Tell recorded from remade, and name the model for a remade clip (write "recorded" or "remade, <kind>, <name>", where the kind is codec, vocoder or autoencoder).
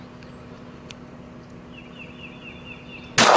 recorded